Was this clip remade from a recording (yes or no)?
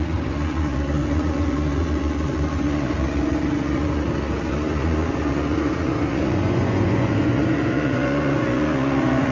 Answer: yes